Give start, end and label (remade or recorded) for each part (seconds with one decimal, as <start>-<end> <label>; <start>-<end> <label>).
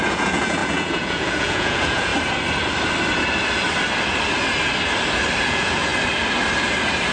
0.0-2.1 remade; 2.1-5.4 recorded; 5.4-5.9 remade; 5.9-7.1 recorded